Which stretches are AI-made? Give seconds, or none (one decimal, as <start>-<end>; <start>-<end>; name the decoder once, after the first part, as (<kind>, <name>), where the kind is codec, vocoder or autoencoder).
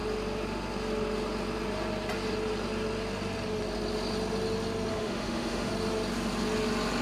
4.9-5.7 (autoencoder, DAC-VAE)